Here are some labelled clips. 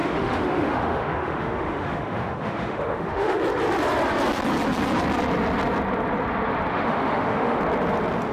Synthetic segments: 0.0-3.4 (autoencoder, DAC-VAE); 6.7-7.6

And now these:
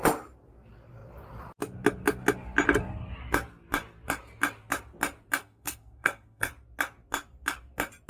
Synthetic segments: 5.4-6.5 (codec, SNAC)

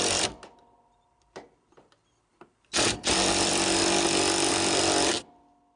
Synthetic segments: 0.0-2.3 (vocoder, BigVGAN v2); 3.0-3.8; 4.5-5.8

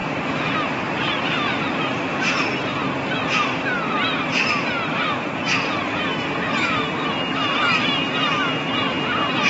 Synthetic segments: none

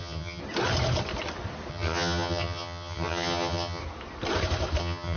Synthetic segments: 0.0-0.4 (vocoder, HiFi-GAN); 1.7-3.8; 4.8-5.2